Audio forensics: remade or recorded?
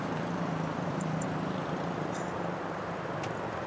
remade